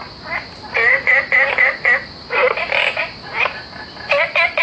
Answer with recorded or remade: recorded